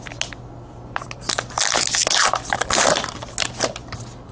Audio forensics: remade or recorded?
recorded